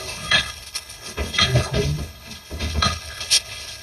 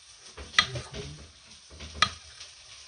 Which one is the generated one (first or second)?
first